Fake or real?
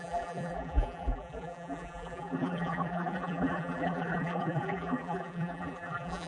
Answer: fake